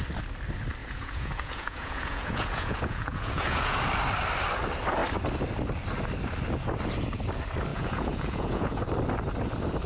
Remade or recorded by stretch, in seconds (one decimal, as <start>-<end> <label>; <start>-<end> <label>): 0.0-0.8 recorded; 0.8-3.8 remade; 3.8-7.7 recorded; 7.7-8.8 remade; 8.8-9.9 recorded